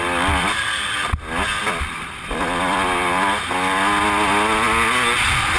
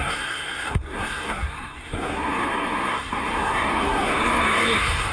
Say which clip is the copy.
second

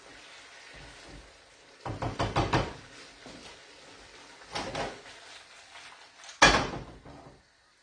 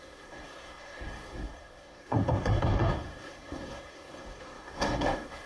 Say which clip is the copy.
second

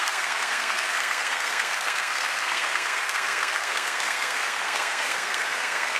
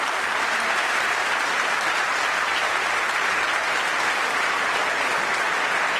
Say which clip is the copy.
first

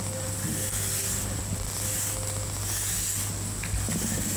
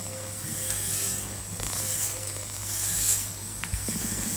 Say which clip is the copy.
second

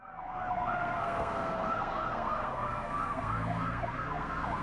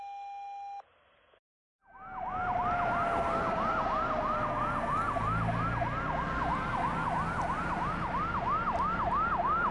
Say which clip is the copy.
first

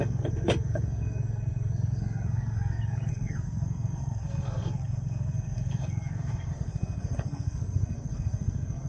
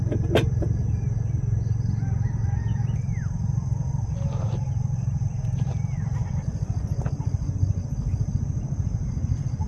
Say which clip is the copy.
first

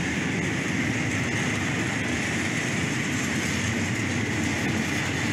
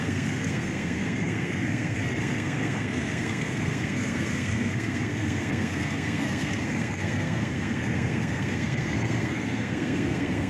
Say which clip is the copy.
second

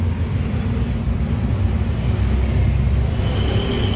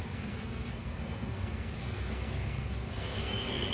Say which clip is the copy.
second